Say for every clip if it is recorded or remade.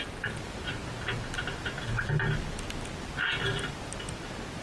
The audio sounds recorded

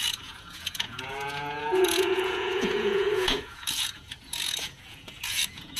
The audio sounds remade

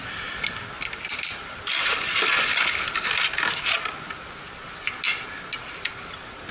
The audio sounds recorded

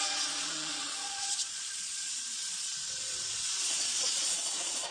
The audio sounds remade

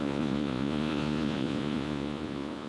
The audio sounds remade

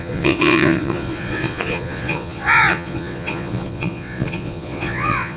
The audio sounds remade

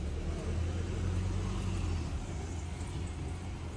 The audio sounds recorded